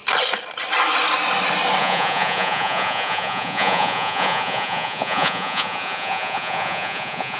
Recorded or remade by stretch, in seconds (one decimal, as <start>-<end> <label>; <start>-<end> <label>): 0.0-1.8 recorded; 1.8-7.4 remade